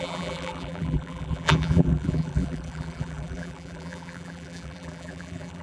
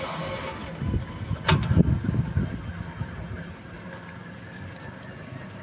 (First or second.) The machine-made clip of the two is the first